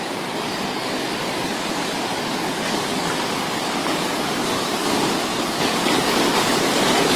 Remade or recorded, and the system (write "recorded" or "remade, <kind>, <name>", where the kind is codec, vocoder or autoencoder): remade, codec, DAC